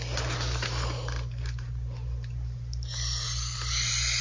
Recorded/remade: recorded